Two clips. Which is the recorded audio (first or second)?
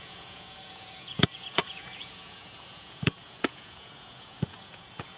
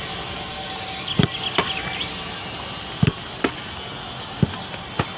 second